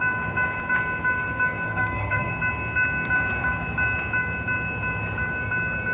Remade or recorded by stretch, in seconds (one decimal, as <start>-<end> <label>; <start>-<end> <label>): 0.0-1.7 recorded; 1.7-2.3 remade; 2.3-5.9 recorded